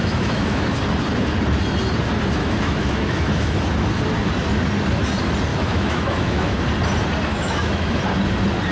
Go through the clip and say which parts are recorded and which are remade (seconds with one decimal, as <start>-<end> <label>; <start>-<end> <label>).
0.0-0.8 remade; 0.8-2.4 recorded; 2.4-3.6 remade; 3.6-5.5 recorded; 5.5-6.6 remade; 6.6-7.3 recorded; 7.3-8.0 remade; 8.0-8.7 recorded